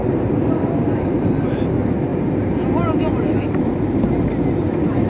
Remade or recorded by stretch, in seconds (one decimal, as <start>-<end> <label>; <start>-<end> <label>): 0.0-1.7 remade; 1.7-2.1 recorded; 2.1-4.1 remade; 4.1-5.1 recorded